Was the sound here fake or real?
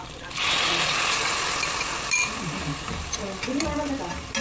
real